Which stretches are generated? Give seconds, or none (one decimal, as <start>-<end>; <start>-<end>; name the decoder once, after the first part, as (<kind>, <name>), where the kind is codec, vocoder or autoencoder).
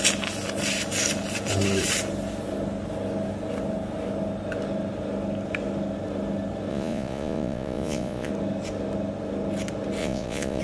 6.7-8.3 (vocoder, Vocos); 10.0-10.6